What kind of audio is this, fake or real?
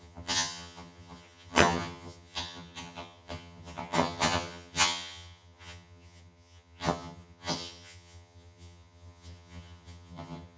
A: fake